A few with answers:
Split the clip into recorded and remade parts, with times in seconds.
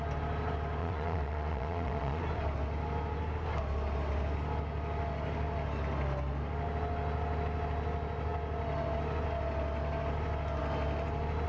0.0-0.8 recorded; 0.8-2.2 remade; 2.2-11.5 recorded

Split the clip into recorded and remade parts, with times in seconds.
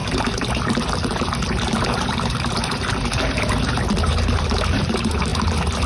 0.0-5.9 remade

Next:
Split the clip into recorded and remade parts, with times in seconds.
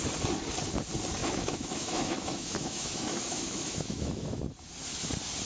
0.0-1.2 recorded; 1.2-4.4 remade; 4.4-5.4 recorded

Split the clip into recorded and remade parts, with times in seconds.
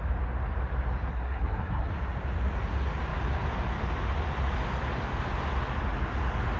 0.0-1.1 recorded; 1.1-1.9 remade; 1.9-6.6 recorded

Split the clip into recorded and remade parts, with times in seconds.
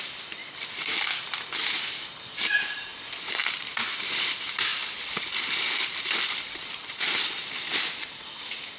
0.0-0.4 remade; 0.4-2.5 recorded; 2.5-8.8 remade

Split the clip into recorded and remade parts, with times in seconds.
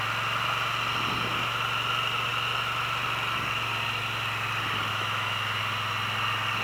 0.0-4.9 recorded; 4.9-5.6 remade; 5.6-6.6 recorded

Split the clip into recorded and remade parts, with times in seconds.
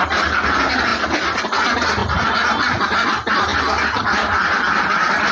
0.0-5.3 recorded